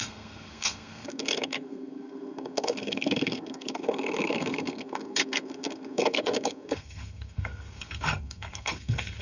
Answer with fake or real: fake